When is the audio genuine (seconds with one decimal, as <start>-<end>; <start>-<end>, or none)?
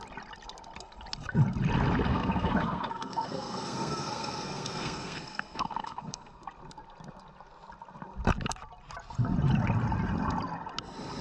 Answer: 0.0-2.1; 6.4-11.2